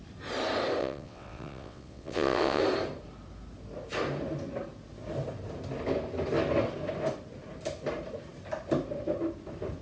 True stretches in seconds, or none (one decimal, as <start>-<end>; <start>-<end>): 0.0-0.8; 2.6-9.8